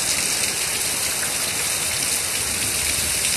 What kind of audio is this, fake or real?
real